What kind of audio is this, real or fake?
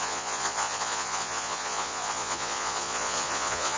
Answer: fake